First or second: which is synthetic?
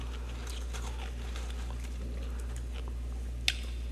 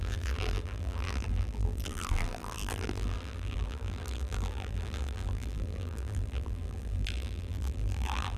second